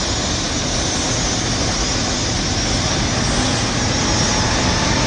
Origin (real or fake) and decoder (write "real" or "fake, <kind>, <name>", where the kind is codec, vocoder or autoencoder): real